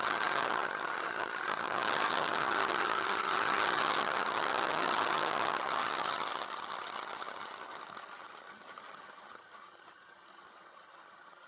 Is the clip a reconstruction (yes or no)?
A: yes